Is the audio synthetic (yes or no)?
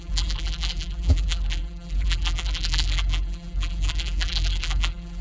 yes